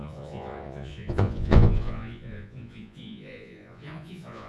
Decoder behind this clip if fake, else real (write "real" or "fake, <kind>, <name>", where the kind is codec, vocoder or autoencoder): fake, vocoder, Vocos